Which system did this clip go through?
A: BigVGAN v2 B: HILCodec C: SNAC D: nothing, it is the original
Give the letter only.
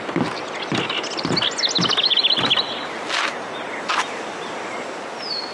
D